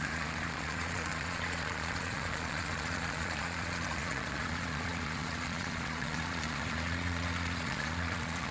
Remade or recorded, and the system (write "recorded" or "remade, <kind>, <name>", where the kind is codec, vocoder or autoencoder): remade, vocoder, Vocos